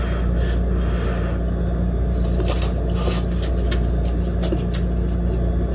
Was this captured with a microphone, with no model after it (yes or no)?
yes